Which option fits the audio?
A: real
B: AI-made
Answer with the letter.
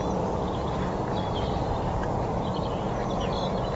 A